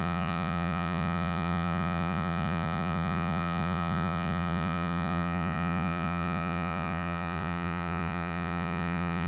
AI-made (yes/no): yes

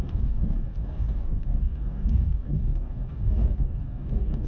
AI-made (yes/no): yes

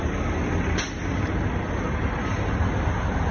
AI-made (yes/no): no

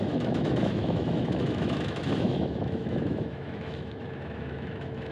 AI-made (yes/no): yes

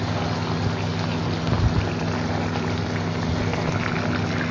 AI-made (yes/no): no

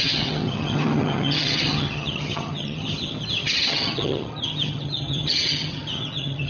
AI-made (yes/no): yes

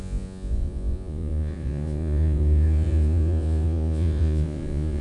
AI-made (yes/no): yes